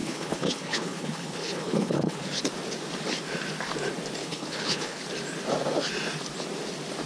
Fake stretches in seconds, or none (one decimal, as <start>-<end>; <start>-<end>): 0.0-2.4; 4.2-5.0